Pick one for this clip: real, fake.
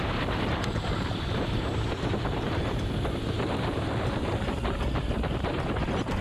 fake